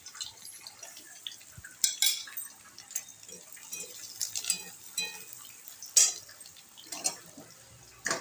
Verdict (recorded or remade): recorded